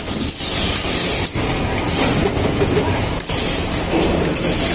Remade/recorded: recorded